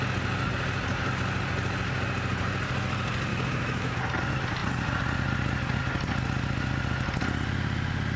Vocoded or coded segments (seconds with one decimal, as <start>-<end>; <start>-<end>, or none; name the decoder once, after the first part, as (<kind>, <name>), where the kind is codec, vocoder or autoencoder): 3.3-4.0 (autoencoder, DAC-VAE)